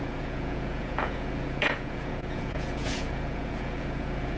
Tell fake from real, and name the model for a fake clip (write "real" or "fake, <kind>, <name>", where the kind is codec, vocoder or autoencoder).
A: fake, vocoder, Vocos